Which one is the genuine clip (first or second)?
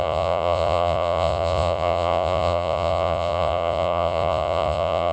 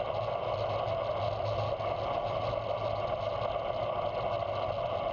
second